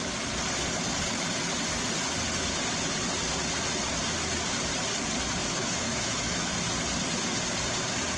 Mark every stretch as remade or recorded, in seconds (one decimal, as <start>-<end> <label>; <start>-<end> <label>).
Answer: 0.0-5.4 recorded; 5.4-6.6 remade; 6.6-8.2 recorded